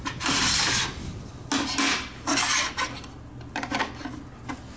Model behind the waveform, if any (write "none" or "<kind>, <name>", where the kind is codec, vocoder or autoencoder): none